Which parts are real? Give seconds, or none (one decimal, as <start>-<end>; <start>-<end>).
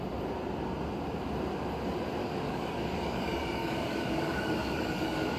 0.0-2.2